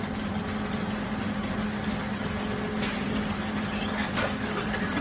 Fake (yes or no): no